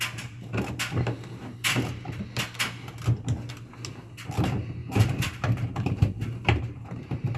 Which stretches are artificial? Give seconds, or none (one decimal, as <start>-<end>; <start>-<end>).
4.8-6.6